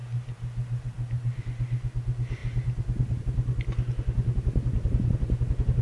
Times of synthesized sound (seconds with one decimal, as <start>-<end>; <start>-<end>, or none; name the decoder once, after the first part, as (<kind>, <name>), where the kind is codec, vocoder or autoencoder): none